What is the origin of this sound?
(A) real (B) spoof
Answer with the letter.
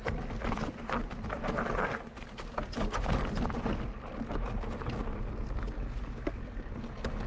A